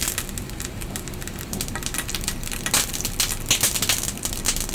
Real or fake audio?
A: real